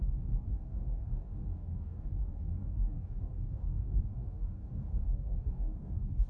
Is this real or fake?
fake